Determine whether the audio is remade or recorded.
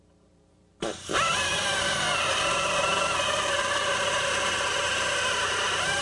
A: remade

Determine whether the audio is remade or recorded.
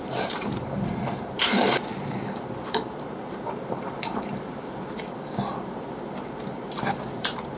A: remade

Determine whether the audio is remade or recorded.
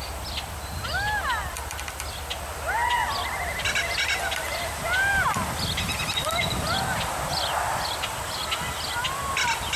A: recorded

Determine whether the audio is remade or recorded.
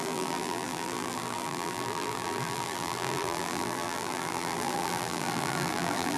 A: remade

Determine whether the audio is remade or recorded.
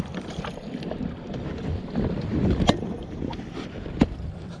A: remade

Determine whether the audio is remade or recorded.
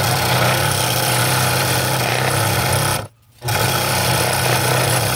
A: recorded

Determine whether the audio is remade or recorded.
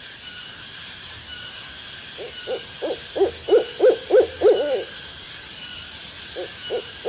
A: recorded